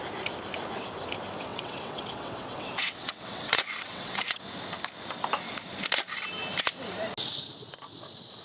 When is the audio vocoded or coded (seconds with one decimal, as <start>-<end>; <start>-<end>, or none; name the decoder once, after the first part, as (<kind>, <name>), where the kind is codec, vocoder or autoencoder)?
1.5-4.4 (vocoder, WaveNeXt)

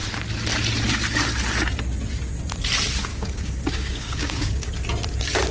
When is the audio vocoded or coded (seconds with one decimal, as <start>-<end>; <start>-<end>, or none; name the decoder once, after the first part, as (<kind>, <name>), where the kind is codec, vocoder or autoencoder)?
3.1-4.7 (codec, DAC)

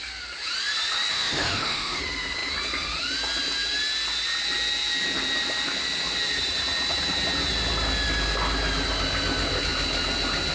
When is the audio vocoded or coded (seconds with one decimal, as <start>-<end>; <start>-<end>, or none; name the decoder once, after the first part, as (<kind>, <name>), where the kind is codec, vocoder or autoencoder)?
1.1-2.0 (autoencoder, DAC-VAE)

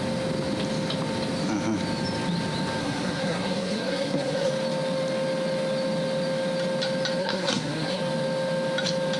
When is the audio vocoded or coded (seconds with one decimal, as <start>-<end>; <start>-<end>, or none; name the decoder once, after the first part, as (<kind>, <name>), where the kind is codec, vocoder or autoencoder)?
2.8-4.5 (codec, SNAC); 7.2-8.0

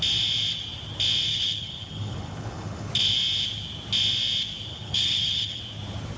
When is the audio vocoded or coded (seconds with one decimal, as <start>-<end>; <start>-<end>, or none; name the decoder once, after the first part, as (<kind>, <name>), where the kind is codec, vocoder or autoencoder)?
1.3-2.9 (codec, HILCodec); 4.7-5.6